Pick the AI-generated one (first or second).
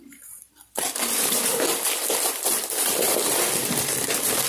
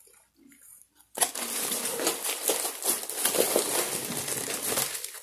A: first